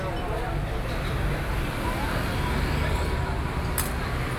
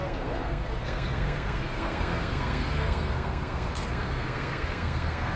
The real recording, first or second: first